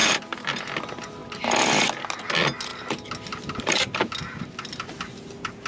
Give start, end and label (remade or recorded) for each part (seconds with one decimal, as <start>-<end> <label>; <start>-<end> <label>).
0.0-0.6 remade; 0.6-5.7 recorded